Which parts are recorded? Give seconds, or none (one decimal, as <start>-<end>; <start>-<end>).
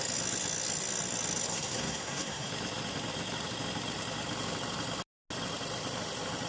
0.0-1.5; 2.5-6.5